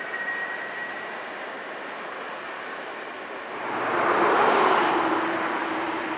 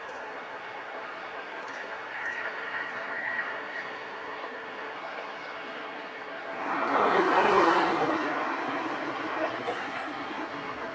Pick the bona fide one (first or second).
first